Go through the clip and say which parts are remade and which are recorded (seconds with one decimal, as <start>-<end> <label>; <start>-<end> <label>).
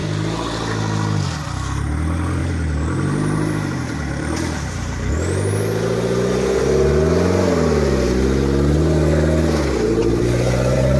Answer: 0.0-2.4 recorded; 2.4-5.1 remade; 5.1-10.0 recorded; 10.0-11.0 remade